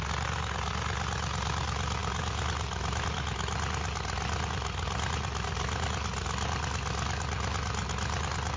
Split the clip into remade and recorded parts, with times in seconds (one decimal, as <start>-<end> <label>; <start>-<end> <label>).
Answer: 0.0-2.0 recorded; 2.0-3.2 remade; 3.2-8.6 recorded